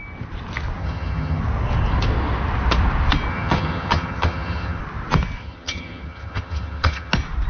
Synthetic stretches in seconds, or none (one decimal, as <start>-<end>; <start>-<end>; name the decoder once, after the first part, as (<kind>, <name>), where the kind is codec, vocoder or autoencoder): 0.8-1.4 (vocoder, HiFi-GAN); 3.3-4.8; 5.4-7.1